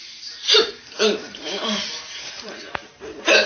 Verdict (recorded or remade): remade